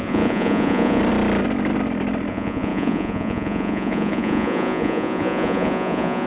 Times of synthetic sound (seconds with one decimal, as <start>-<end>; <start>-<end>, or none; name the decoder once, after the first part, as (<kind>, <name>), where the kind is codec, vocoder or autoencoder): 0.0-1.0 (vocoder, Vocos); 2.3-6.3